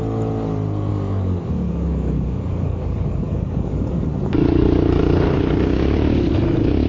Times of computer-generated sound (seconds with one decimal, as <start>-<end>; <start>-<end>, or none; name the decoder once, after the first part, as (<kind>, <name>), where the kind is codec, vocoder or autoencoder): 0.9-5.0 (codec, DAC)